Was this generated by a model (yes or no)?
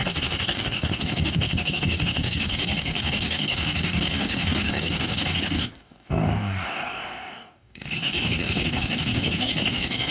yes